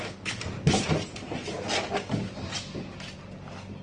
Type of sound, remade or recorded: recorded